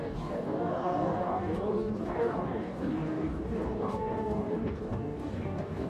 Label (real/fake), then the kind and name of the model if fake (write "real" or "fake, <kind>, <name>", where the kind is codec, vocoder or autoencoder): fake, codec, DAC